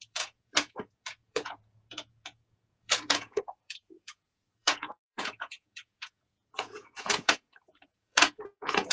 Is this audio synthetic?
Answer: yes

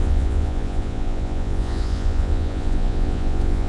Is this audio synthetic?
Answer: yes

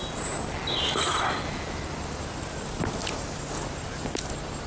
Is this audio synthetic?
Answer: no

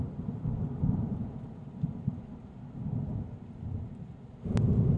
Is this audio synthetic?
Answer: no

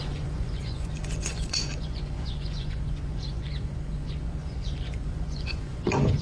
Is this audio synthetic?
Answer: yes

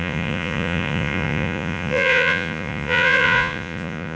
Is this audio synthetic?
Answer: yes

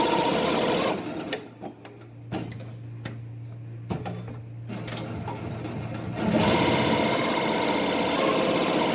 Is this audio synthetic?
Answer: no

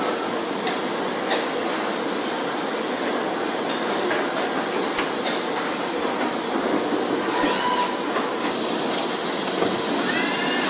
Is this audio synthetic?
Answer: no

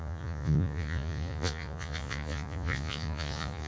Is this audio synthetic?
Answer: yes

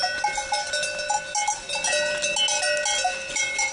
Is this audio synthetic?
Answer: no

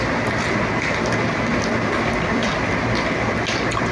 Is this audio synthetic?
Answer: no